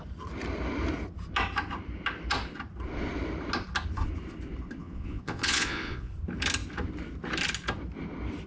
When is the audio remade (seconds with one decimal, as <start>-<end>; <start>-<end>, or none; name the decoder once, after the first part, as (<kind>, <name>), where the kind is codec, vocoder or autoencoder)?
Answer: 4.8-6.1 (vocoder, Vocos)